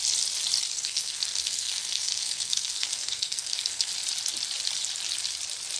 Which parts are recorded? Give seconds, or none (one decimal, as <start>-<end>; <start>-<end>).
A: 0.0-0.7; 3.9-5.8